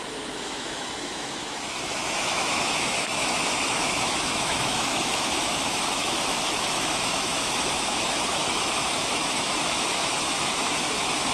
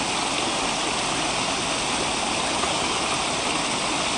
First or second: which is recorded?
second